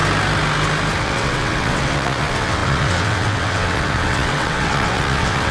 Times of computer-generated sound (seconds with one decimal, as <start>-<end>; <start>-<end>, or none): 1.0-5.5